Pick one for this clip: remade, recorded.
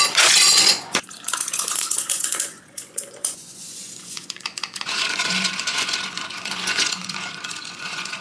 remade